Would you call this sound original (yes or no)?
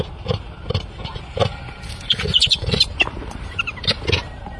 no